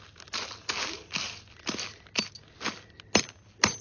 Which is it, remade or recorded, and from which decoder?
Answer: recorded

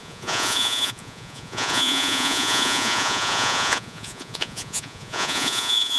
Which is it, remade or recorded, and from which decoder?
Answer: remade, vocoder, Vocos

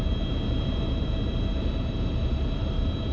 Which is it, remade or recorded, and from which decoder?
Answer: recorded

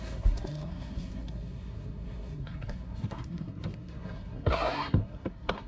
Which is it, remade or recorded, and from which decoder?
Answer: remade, codec, SNAC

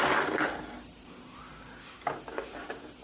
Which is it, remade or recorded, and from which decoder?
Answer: recorded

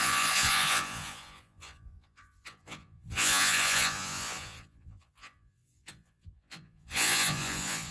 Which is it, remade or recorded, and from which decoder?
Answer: remade, vocoder, Vocos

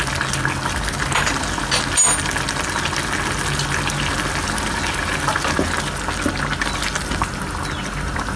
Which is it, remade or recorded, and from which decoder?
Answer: recorded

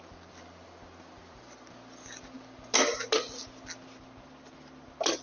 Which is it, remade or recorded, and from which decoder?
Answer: recorded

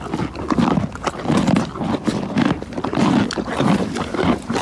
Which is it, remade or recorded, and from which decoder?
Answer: recorded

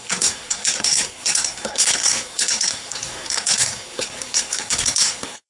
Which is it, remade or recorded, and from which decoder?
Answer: remade, codec, SNAC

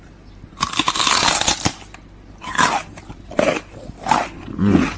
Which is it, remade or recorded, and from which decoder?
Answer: recorded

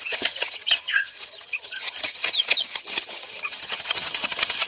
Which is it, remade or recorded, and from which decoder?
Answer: remade, vocoder, HiFi-GAN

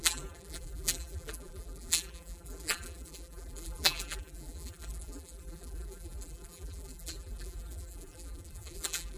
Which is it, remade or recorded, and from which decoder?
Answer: remade, vocoder, BigVGAN v2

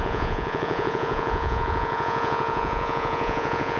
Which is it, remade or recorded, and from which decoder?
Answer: remade, vocoder, Vocos